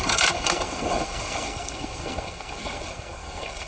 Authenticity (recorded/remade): remade